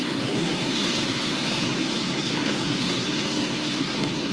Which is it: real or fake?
fake